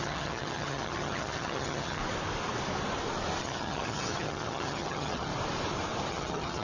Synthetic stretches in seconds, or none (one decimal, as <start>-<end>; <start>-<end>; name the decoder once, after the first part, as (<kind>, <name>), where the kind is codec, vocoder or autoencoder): 0.0-2.0 (vocoder, HiFi-GAN); 3.4-5.3; 6.1-6.6